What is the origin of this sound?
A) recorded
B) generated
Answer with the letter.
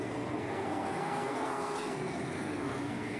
B